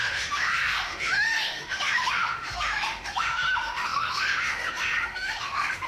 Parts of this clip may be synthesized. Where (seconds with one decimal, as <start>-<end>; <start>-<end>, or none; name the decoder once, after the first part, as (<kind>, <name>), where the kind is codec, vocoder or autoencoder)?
0.0-5.9 (autoencoder, DAC-VAE)